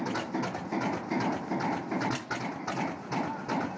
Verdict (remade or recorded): recorded